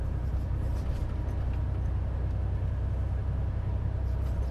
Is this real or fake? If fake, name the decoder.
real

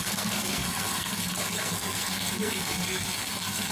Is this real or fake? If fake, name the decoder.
fake, codec, SNAC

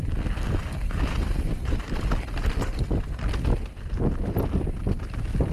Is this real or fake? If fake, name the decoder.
real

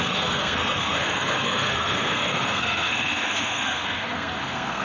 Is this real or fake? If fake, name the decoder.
fake, codec, SNAC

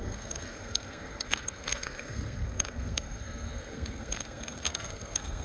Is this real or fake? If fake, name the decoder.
fake, codec, SNAC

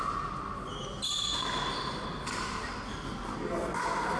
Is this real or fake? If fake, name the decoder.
real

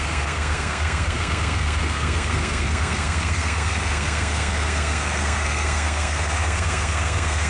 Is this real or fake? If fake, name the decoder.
fake, codec, SNAC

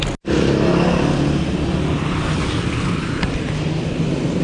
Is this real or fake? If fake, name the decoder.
real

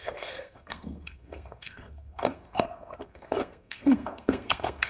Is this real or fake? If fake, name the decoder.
fake, codec, SNAC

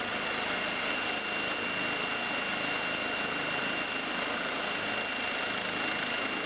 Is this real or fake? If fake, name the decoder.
real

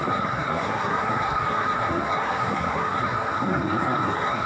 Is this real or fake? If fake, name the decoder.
fake, codec, SNAC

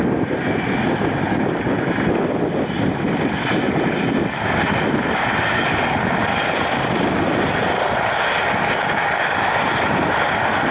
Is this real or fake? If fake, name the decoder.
real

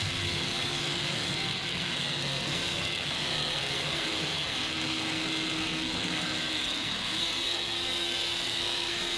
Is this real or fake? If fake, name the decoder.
fake, codec, SNAC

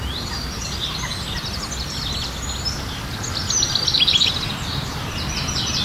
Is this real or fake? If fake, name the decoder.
real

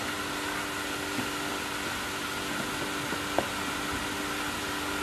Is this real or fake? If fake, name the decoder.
real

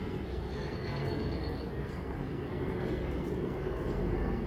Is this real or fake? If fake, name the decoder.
fake, codec, SNAC